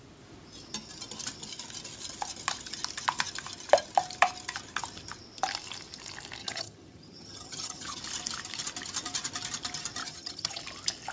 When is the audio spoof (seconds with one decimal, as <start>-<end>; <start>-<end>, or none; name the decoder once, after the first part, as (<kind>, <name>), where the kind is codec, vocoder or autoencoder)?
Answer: 6.4-8.0 (vocoder, HiFi-GAN); 10.0-10.6